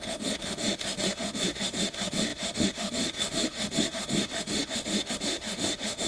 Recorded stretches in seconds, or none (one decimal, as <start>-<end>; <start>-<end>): none